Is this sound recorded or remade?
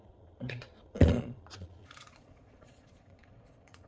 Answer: remade